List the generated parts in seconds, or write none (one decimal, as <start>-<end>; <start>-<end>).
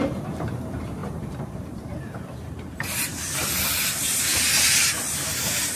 1.0-3.9; 4.3-4.9